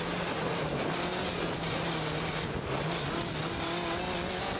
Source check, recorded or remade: recorded